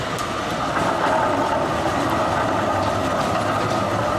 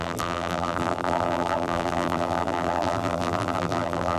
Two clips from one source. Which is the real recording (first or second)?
first